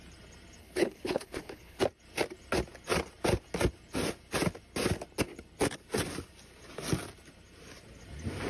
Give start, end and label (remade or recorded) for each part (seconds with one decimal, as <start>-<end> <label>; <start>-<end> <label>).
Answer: 0.0-0.6 recorded; 0.6-1.8 remade; 1.8-8.5 recorded